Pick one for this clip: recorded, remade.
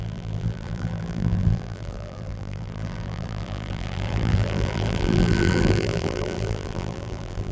remade